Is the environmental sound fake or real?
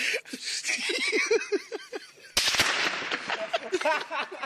real